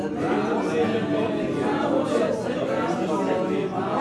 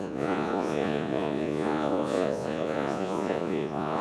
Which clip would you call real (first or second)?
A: first